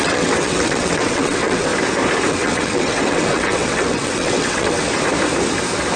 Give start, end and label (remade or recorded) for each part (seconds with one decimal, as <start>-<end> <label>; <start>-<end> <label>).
0.0-1.7 remade; 1.7-2.3 recorded; 2.3-4.8 remade; 4.8-6.0 recorded